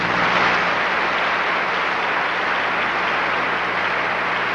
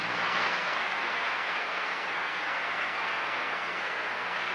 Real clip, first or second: first